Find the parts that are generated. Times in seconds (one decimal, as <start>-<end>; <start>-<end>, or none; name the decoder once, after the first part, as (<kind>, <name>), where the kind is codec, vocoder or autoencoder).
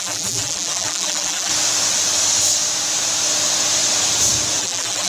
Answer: 0.0-1.5 (vocoder, BigVGAN v2); 4.6-5.1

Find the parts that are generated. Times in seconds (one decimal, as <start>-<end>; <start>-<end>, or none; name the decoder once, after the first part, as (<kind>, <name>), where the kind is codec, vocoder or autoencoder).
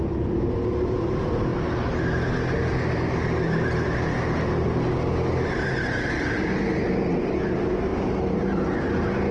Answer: none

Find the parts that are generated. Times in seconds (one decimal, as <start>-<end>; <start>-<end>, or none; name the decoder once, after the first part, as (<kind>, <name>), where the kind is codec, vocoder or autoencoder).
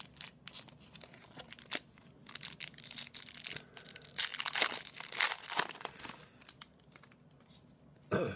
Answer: none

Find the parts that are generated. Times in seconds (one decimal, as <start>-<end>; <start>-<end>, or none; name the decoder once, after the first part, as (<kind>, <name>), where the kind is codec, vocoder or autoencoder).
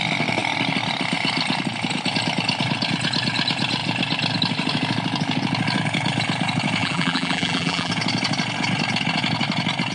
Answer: 6.8-7.9 (vocoder, BigVGAN v2)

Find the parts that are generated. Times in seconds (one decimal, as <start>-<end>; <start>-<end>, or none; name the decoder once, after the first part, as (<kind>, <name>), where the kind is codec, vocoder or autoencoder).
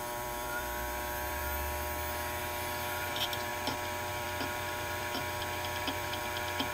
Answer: 0.0-1.4 (vocoder, BigVGAN v2); 2.4-3.5; 4.1-6.2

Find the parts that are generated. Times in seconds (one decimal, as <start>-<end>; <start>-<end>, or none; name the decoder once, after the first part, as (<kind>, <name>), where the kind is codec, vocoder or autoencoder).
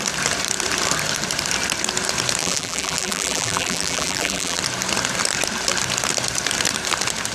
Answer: 2.4-4.6 (vocoder, BigVGAN v2)